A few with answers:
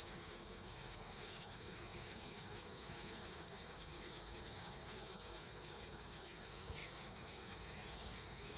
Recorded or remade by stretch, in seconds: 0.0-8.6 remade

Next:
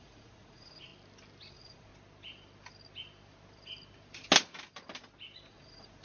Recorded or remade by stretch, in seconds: 0.0-0.9 remade; 0.9-1.5 recorded; 1.5-1.9 remade; 1.9-5.5 recorded; 5.5-6.0 remade

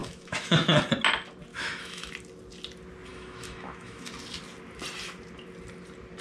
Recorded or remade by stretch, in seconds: 0.0-0.8 remade; 0.8-1.5 recorded; 1.5-2.1 remade; 2.1-3.1 recorded; 3.1-4.1 remade; 4.1-6.2 recorded

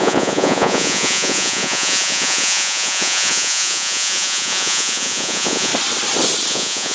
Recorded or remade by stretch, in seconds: 0.0-5.7 remade; 5.7-6.5 recorded; 6.5-6.9 remade

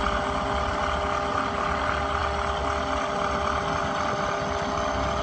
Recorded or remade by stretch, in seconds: 0.0-5.2 recorded